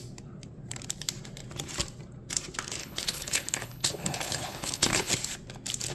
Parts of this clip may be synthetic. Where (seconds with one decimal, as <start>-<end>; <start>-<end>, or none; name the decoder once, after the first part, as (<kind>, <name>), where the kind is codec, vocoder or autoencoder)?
2.8-5.1 (codec, HILCodec)